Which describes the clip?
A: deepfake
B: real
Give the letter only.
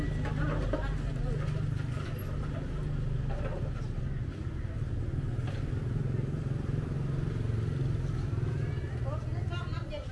B